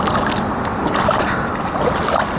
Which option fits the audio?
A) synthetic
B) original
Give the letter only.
B